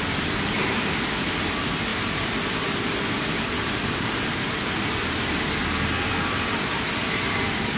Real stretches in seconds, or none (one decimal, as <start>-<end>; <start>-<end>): 0.0-7.8